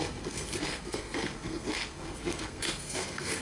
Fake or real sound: fake